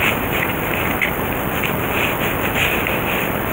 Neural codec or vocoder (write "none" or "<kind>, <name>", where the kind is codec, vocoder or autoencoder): none